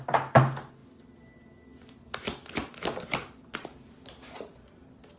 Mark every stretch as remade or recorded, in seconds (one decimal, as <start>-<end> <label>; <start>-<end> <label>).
0.0-5.2 recorded